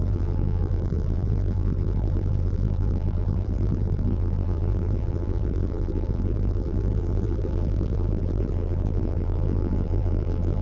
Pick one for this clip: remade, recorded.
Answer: remade